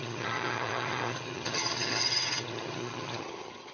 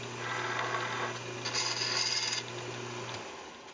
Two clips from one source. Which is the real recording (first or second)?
second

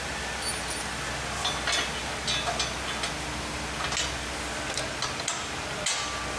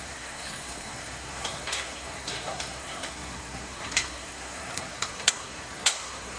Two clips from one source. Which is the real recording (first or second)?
first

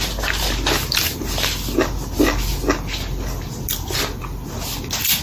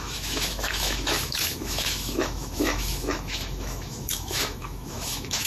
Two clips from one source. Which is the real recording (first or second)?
first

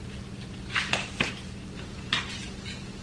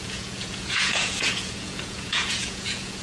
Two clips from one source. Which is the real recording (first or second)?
first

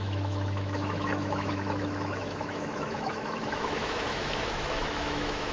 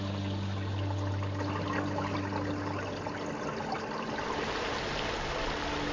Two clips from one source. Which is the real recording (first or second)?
second